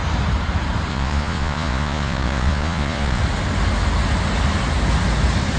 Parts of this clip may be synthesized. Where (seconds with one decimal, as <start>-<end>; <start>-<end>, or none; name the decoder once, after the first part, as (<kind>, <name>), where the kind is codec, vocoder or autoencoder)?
0.9-3.2 (vocoder, Vocos)